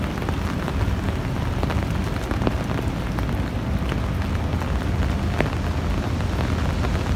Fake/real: real